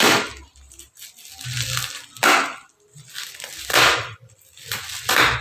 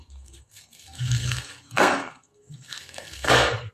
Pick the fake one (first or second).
second